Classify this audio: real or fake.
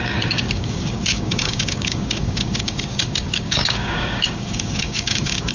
fake